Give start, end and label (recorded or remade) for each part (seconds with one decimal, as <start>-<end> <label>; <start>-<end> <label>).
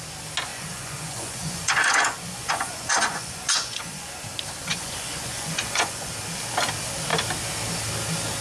0.0-0.5 recorded; 0.5-4.1 remade; 4.1-4.6 recorded; 4.6-6.1 remade; 6.1-8.4 recorded